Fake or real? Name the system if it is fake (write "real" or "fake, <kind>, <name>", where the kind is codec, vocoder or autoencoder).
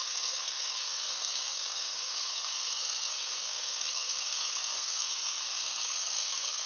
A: fake, codec, SNAC